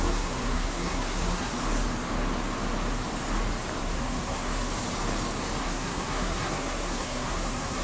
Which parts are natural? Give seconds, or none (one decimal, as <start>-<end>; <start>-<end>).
1.5-3.8; 4.7-5.6